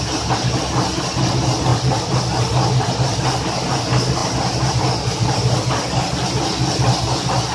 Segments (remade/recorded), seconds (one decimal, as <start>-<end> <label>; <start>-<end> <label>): 0.0-7.5 recorded